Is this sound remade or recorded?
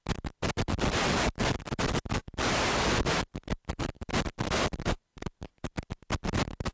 recorded